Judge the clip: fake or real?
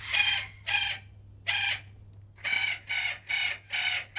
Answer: real